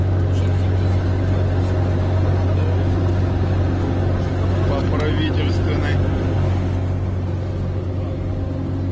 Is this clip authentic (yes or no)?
yes